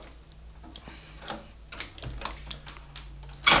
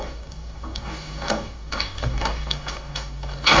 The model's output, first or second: second